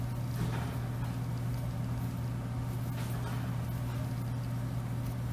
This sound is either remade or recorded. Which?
recorded